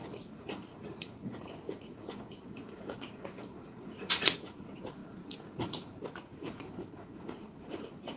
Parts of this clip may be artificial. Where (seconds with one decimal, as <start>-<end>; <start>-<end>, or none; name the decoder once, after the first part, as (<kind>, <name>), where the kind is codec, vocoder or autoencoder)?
0.0-8.2 (vocoder, Vocos)